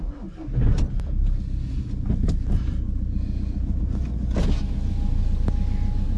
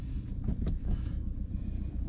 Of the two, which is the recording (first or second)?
first